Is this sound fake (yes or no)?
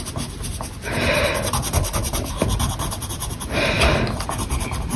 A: no